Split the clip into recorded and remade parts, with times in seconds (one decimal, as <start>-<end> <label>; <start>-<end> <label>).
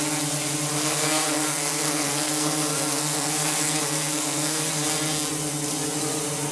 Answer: 0.0-0.8 recorded; 0.8-4.7 remade; 4.7-6.5 recorded